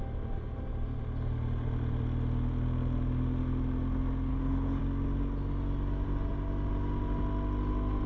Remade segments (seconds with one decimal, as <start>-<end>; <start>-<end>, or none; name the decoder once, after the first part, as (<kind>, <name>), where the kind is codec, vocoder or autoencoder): 4.3-4.8 (codec, HILCodec)